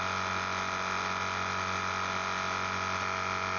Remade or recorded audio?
recorded